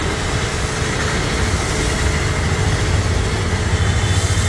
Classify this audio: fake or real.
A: real